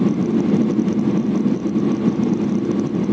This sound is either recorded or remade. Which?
recorded